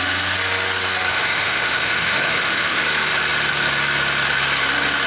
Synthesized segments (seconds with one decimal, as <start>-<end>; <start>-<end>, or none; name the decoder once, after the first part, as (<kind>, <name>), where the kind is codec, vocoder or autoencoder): 1.1-2.8 (autoencoder, DAC-VAE)